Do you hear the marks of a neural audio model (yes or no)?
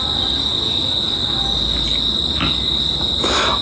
no